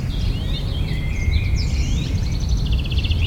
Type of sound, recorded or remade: recorded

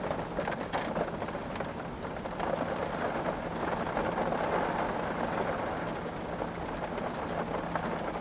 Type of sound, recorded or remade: recorded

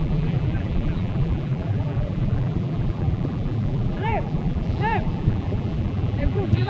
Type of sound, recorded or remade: remade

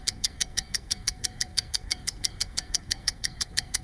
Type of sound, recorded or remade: remade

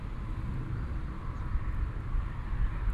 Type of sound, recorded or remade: recorded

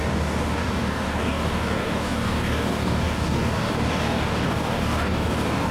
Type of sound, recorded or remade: remade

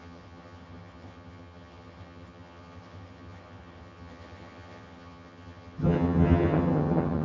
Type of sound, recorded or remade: remade